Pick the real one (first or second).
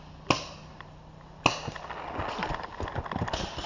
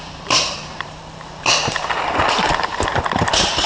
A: first